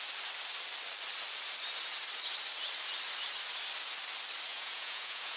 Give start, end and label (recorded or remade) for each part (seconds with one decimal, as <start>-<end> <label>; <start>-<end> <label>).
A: 0.0-4.5 recorded; 4.5-5.4 remade